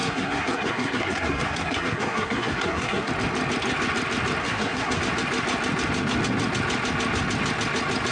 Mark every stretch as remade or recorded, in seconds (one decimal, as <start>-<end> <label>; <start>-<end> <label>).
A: 0.0-3.1 remade; 3.1-4.4 recorded; 4.4-5.0 remade; 5.0-8.1 recorded